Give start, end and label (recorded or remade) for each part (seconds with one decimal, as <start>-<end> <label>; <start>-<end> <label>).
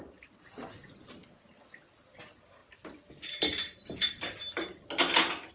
0.0-5.5 recorded